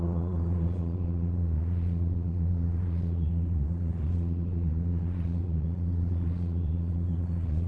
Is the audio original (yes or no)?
no